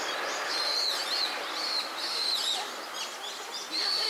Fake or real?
real